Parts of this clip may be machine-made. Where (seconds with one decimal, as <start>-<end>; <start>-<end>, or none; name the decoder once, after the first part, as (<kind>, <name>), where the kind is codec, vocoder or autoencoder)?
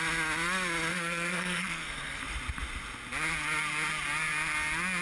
0.9-2.2 (codec, SNAC)